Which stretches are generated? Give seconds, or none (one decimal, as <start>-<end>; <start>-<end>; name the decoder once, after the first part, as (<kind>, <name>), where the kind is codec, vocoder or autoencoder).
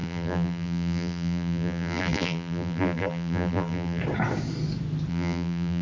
0.0-4.0 (vocoder, BigVGAN v2); 5.1-5.8